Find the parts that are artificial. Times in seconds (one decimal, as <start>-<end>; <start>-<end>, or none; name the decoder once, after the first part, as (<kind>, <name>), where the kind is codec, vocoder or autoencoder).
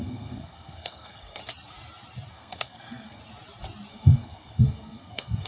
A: 0.0-1.4 (codec, SNAC); 2.3-3.2; 3.9-5.5